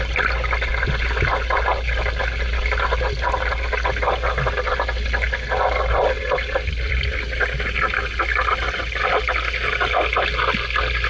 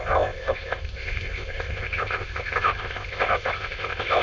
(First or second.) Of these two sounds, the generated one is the second